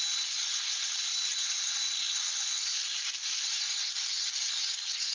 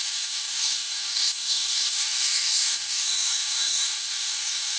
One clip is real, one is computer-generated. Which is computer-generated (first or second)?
second